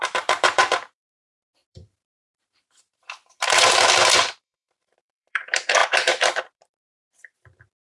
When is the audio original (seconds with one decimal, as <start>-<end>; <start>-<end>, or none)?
none